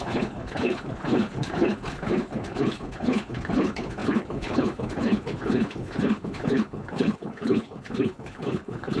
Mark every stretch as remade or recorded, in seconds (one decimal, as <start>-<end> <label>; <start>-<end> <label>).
0.0-9.0 remade